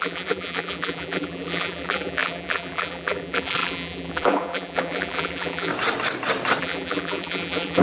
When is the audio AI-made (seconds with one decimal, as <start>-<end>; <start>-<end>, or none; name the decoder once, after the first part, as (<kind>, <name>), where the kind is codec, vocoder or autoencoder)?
0.0-5.7 (vocoder, BigVGAN v2); 6.6-7.8